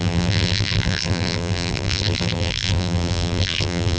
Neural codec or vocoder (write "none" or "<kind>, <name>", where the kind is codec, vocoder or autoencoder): vocoder, BigVGAN v2